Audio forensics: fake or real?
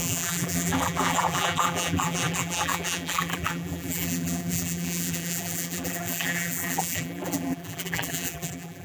fake